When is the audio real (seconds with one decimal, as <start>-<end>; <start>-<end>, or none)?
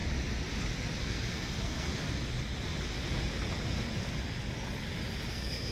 0.0-1.0; 1.9-5.3